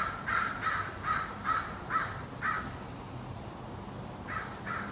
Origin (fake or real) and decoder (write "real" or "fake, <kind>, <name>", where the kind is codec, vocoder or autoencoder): real